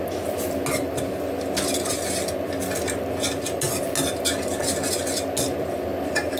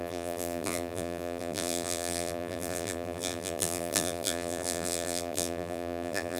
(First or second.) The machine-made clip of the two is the second